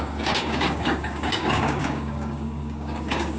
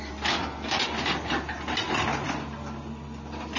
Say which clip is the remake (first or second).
first